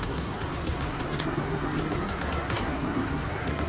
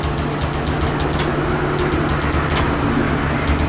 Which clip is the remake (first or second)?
first